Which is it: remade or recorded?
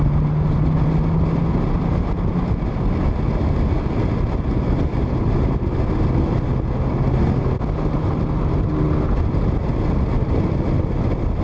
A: recorded